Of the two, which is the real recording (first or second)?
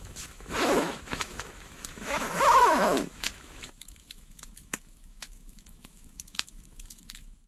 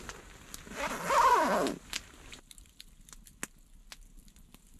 second